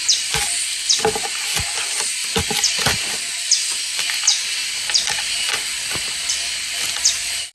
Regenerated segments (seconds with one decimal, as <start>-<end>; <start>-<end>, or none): 0.0-2.2; 4.9-7.5